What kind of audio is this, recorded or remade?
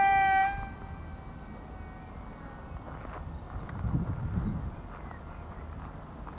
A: recorded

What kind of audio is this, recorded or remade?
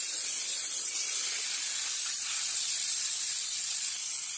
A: recorded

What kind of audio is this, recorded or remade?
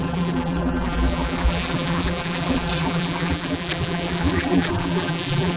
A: remade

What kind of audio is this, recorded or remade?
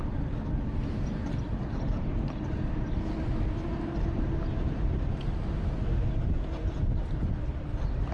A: recorded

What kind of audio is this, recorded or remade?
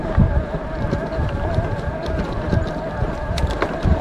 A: remade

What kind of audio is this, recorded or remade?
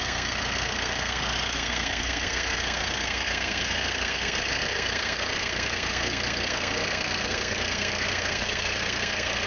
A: remade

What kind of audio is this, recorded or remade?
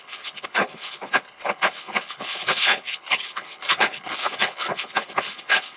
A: remade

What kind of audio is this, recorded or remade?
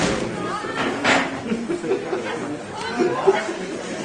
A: recorded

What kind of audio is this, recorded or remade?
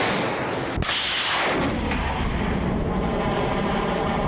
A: recorded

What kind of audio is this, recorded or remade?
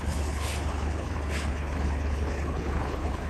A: remade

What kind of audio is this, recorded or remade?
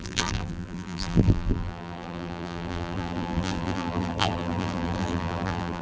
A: remade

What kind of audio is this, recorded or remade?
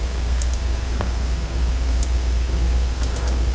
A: remade